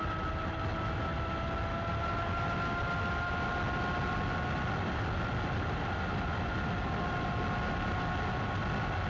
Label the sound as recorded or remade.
recorded